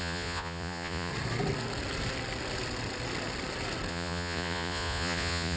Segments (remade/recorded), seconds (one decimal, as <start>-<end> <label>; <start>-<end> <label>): 0.0-1.1 remade; 1.1-3.9 recorded; 3.9-5.6 remade